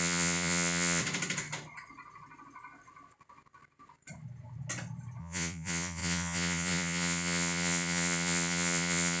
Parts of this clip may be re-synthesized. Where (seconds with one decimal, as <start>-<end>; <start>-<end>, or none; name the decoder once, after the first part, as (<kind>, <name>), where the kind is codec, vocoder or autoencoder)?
0.0-1.0 (vocoder, Vocos); 5.2-9.2